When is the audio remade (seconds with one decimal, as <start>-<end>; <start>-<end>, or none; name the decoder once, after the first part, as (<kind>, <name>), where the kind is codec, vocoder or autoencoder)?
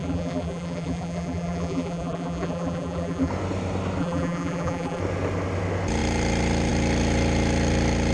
0.0-3.3 (vocoder, BigVGAN v2); 4.0-5.0